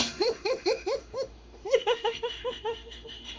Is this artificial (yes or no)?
yes